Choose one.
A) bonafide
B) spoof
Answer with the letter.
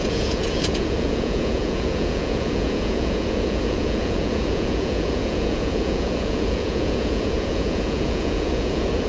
B